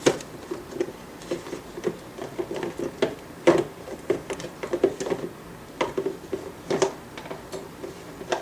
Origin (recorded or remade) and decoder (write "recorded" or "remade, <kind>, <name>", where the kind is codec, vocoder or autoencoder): recorded